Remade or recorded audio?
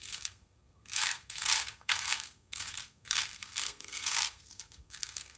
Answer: remade